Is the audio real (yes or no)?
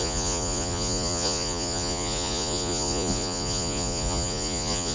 no